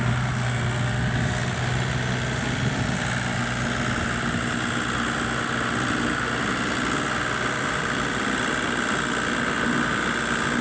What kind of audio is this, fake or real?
real